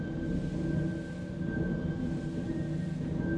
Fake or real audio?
real